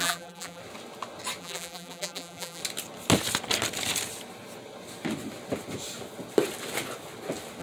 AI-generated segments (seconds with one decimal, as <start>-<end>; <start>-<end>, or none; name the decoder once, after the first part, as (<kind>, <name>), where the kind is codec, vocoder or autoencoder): 0.0-0.6 (vocoder, BigVGAN v2); 1.4-2.6